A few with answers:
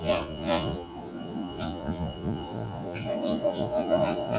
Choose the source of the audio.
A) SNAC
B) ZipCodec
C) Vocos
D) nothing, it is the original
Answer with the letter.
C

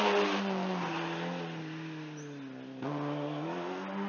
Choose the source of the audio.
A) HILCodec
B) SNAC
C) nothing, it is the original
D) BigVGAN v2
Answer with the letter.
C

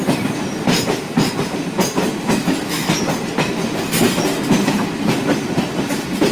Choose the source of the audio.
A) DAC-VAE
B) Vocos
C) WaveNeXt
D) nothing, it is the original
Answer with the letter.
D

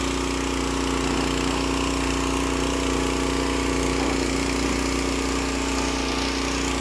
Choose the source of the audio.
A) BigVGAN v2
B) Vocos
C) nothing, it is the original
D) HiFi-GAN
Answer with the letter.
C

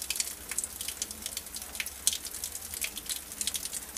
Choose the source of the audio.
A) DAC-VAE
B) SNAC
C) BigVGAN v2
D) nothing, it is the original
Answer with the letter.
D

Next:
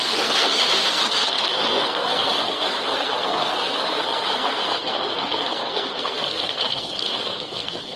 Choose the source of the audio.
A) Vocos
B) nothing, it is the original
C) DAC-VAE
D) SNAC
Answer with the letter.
D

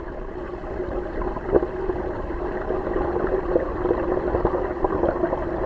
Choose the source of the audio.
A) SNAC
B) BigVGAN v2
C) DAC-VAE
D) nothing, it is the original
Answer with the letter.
D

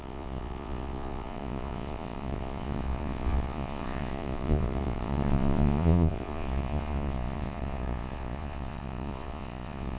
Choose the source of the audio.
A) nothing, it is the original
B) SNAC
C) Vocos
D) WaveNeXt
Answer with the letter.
C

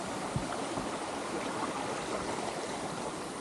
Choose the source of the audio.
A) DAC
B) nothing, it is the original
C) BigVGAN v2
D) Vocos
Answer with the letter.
C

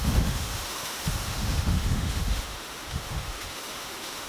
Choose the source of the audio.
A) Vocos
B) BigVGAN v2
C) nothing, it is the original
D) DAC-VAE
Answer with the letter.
D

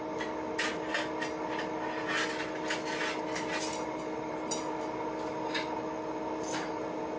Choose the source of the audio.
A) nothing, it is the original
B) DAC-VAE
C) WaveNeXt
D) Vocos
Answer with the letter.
A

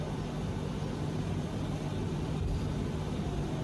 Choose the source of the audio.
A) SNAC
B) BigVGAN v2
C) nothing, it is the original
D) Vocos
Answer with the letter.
C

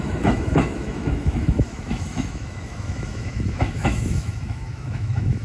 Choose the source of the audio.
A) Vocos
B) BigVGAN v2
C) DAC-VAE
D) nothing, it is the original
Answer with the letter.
C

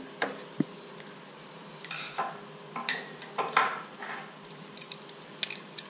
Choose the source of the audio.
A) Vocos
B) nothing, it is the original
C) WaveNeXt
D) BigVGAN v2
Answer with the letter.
B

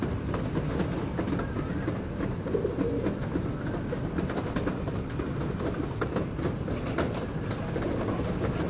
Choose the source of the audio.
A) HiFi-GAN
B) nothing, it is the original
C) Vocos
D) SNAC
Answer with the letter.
B